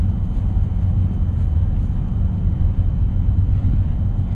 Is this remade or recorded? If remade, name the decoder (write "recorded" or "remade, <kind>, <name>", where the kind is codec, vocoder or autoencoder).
recorded